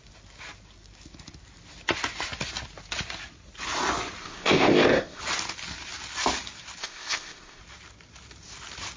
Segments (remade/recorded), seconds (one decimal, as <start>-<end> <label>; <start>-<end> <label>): 0.0-4.2 recorded; 4.2-5.2 remade; 5.2-6.8 recorded; 6.8-7.6 remade; 7.6-9.0 recorded